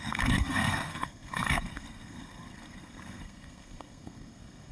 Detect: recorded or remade remade